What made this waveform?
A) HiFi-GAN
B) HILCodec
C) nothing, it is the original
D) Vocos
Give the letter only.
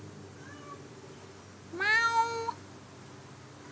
C